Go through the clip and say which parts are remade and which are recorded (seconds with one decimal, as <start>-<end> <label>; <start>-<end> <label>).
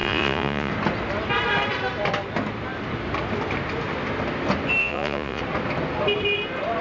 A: 0.0-0.7 remade; 0.7-4.8 recorded; 4.8-5.4 remade; 5.4-6.8 recorded